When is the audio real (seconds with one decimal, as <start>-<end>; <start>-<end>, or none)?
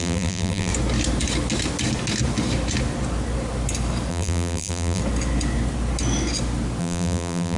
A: 0.7-4.1; 5.0-6.8